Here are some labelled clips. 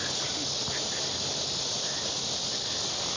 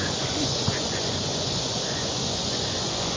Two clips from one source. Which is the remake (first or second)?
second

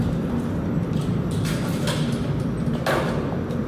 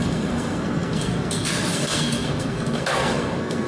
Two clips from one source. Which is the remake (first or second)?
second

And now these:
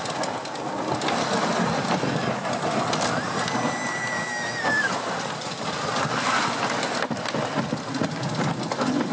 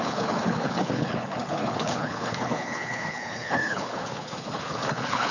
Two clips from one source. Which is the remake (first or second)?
second